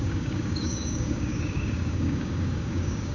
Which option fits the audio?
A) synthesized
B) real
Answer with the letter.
A